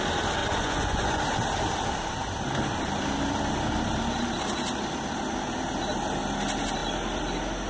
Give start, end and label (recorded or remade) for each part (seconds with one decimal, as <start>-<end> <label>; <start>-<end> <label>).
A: 0.0-0.4 recorded; 0.4-1.2 remade; 1.2-7.7 recorded